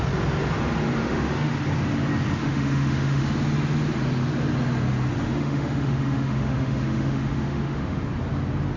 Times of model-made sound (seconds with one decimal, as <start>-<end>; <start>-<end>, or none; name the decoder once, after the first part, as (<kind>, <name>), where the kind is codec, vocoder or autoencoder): 1.0-1.5 (autoencoder, DAC-VAE); 2.4-3.2; 5.2-8.0